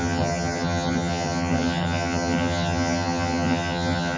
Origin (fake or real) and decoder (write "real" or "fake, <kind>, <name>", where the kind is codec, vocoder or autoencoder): fake, vocoder, HiFi-GAN